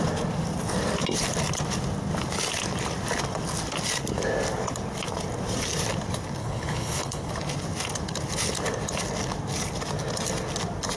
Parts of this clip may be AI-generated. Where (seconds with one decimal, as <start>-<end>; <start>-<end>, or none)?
6.4-7.3

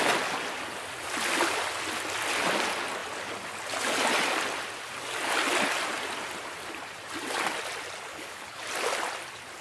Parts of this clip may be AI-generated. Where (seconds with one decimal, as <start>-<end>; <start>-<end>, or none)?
8.1-8.6

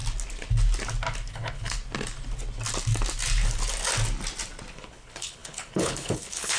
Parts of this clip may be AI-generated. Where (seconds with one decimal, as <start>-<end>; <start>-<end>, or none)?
1.3-1.8; 4.7-6.6

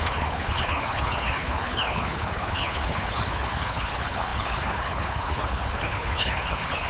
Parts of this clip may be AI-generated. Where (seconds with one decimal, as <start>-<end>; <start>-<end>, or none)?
0.0-6.9

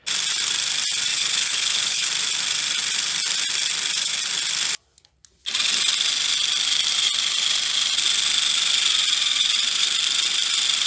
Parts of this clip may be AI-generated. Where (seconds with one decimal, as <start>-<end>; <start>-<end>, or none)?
1.1-2.1

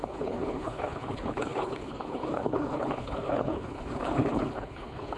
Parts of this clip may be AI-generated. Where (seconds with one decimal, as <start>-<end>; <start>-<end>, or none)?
0.0-5.2